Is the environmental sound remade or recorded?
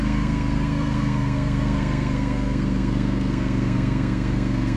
remade